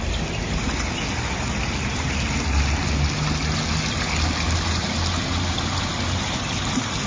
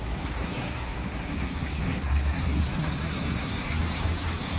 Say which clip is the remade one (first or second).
second